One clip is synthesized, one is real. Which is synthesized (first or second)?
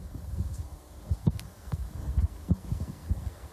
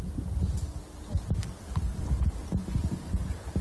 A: first